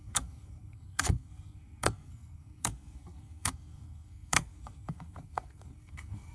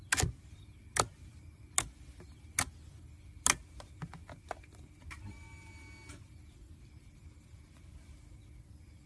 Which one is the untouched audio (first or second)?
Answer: second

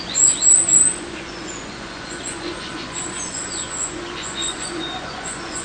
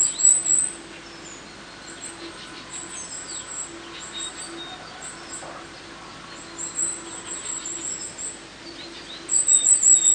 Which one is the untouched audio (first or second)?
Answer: second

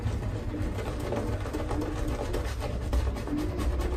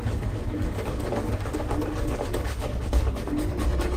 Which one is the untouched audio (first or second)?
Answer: first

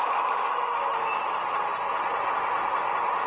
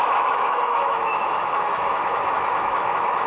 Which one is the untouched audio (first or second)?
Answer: first